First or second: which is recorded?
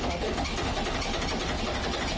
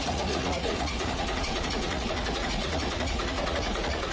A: first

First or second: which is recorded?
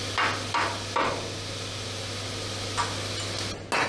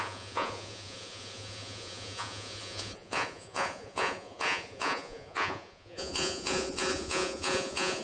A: first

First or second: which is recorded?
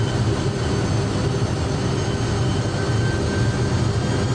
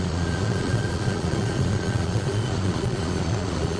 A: first